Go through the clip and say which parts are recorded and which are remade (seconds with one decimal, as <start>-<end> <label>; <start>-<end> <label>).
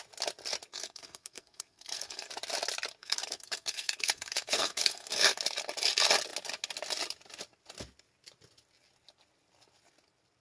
0.0-0.7 recorded; 0.7-2.3 remade; 2.3-3.0 recorded; 3.0-5.4 remade; 5.4-10.4 recorded